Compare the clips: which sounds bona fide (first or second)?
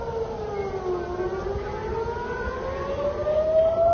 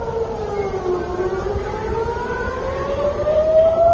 first